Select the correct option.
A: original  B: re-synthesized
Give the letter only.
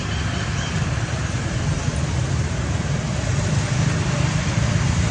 B